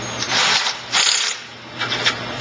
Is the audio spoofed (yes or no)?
no